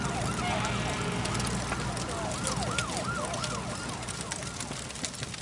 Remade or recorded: recorded